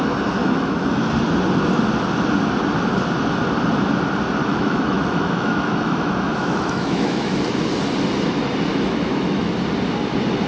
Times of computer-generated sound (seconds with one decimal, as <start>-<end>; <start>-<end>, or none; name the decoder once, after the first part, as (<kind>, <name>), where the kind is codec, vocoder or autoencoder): 0.4-1.1 (autoencoder, DAC-VAE); 4.4-7.4; 8.7-9.5